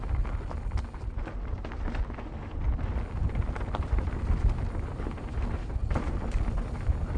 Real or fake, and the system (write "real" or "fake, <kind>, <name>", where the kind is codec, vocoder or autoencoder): real